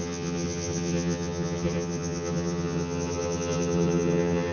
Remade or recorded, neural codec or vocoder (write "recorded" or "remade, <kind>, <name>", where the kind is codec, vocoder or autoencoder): remade, vocoder, HiFi-GAN